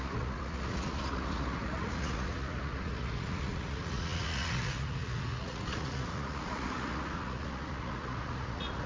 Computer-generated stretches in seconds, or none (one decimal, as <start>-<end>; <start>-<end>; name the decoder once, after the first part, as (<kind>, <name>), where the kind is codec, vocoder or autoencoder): 0.0-8.9 (vocoder, Vocos)

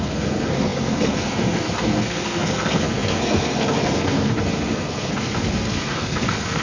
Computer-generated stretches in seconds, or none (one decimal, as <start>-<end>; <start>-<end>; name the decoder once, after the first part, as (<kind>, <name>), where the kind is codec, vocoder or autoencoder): 0.0-6.6 (codec, SNAC)

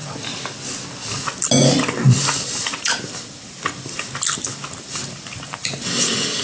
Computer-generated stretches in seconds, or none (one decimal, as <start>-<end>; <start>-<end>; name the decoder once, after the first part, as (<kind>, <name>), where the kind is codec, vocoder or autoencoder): none

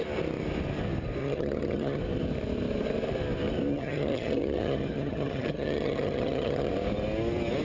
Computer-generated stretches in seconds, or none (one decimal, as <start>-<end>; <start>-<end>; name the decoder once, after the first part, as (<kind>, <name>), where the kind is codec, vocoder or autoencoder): 1.2-2.0 (vocoder, HiFi-GAN); 3.7-6.7

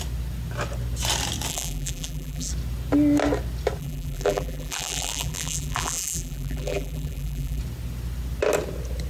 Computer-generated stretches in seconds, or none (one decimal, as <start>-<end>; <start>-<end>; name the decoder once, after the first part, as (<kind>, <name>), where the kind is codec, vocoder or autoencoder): 1.5-2.5 (vocoder, BigVGAN v2); 3.8-7.6

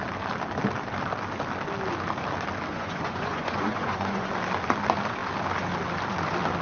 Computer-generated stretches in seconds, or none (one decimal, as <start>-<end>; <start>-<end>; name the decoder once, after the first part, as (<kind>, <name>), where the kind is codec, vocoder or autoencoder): 2.7-4.3 (vocoder, Vocos)

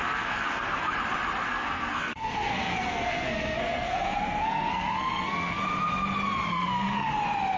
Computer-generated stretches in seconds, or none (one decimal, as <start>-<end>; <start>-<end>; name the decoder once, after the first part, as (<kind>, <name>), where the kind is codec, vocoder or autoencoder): 0.0-0.9 (codec, SNAC); 1.5-5.6; 6.5-7.1